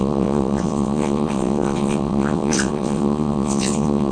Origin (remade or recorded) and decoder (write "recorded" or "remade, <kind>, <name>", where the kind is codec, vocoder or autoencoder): remade, vocoder, WaveNeXt